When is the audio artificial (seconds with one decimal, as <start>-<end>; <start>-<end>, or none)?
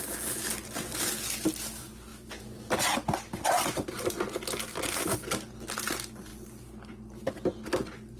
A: none